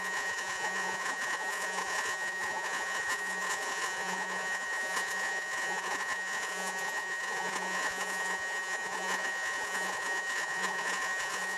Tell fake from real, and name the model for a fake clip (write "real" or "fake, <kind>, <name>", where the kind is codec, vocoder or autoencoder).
fake, vocoder, Vocos